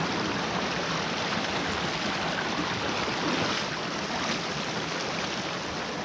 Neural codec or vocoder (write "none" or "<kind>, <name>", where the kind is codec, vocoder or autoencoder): none